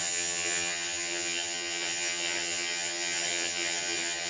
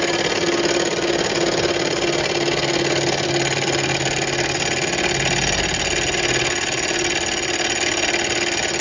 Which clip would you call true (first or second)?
second